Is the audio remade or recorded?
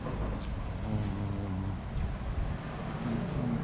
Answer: recorded